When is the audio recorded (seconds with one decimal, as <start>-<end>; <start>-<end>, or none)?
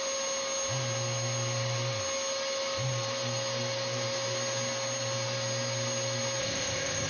0.0-6.4